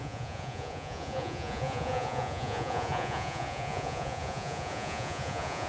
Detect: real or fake fake